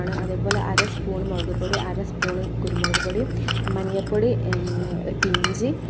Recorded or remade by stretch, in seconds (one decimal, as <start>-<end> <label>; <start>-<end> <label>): 0.0-4.6 recorded; 4.6-5.1 remade; 5.1-5.9 recorded